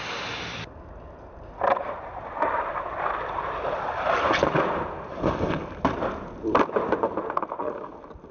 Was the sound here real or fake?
real